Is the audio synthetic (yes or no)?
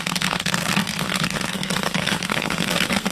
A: yes